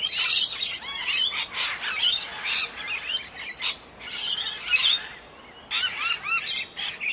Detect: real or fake real